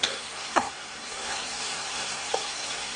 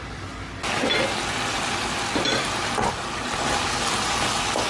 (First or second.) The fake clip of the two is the first